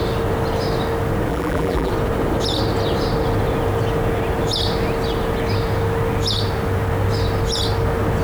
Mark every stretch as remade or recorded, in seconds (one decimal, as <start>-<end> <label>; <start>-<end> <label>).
0.0-1.3 recorded; 1.3-1.9 remade; 1.9-8.2 recorded